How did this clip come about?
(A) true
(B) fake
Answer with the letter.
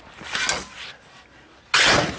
A